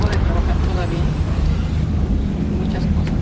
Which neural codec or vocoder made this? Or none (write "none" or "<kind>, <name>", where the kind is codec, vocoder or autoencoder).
vocoder, BigVGAN v2